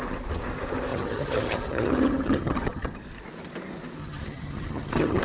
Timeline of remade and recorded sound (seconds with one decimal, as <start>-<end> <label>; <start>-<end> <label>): 0.0-0.9 recorded; 0.9-2.9 remade; 2.9-4.0 recorded; 4.0-5.2 remade